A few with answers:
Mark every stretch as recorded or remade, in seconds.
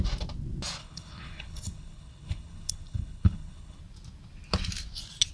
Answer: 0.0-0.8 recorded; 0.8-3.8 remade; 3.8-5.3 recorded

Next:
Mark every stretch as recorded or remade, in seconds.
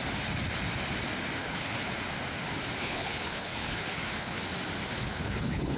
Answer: 0.0-1.4 recorded; 1.4-1.9 remade; 1.9-2.8 recorded; 2.8-4.4 remade; 4.4-4.9 recorded; 4.9-5.8 remade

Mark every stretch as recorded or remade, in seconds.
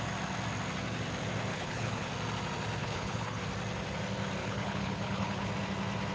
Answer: 0.0-1.5 recorded; 1.5-2.1 remade; 2.1-2.8 recorded; 2.8-3.4 remade; 3.4-4.4 recorded; 4.4-5.5 remade; 5.5-6.1 recorded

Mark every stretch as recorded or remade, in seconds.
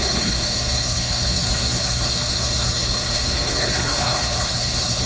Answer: 0.0-5.1 remade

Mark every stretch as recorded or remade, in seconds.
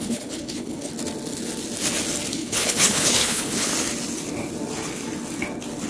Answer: 0.0-0.9 remade; 0.9-2.3 recorded; 2.3-3.7 remade; 3.7-5.9 recorded